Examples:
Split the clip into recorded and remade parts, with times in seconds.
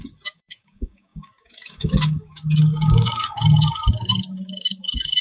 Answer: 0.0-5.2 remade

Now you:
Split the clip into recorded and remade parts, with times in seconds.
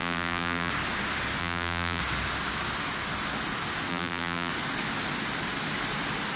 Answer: 0.0-0.7 remade; 0.7-1.4 recorded; 1.4-2.0 remade; 2.0-3.9 recorded; 3.9-4.5 remade; 4.5-6.4 recorded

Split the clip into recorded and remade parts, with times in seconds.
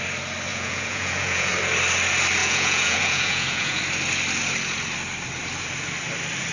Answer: 0.0-0.5 recorded; 0.5-1.5 remade; 1.5-2.4 recorded; 2.4-3.8 remade; 3.8-6.5 recorded